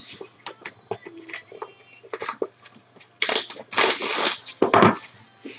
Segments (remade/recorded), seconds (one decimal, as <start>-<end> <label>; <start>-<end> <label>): 0.0-5.6 recorded